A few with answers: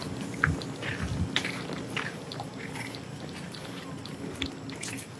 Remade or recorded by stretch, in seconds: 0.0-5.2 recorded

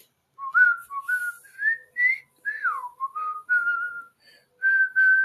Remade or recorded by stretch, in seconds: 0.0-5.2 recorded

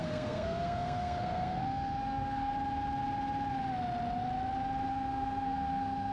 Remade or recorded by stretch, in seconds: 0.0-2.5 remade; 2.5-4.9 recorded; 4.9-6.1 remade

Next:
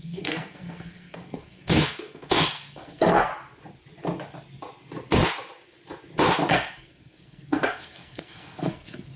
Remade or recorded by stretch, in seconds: 0.0-3.3 remade; 3.3-6.5 recorded; 6.5-9.2 remade

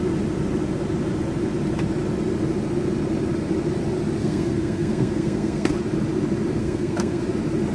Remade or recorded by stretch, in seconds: 0.0-4.2 recorded; 4.2-5.7 remade; 5.7-6.6 recorded; 6.6-7.2 remade; 7.2-7.7 recorded